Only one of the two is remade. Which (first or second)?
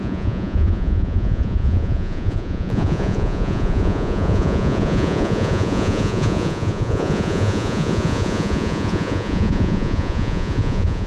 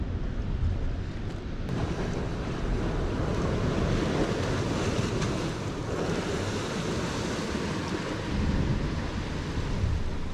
first